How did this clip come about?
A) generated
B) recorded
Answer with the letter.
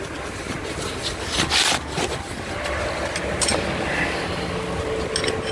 B